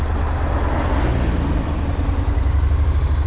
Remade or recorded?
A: recorded